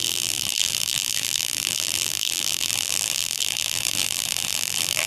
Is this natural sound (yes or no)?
no